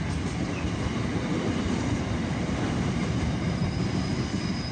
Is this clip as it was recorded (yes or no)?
yes